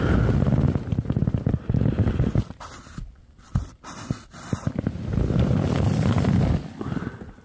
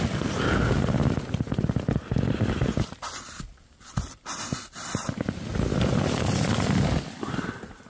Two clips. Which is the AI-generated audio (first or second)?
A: first